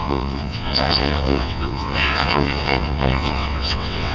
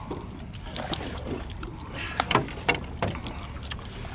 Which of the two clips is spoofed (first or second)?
first